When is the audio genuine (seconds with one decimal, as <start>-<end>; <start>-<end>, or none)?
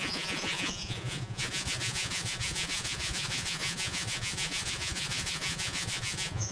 none